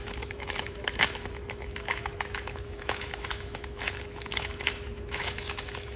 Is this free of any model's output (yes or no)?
no